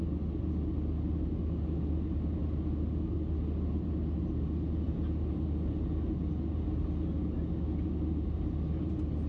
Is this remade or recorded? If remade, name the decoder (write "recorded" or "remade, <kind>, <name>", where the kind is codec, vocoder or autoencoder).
recorded